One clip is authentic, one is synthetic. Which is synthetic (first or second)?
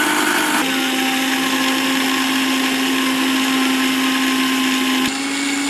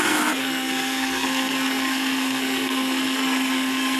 second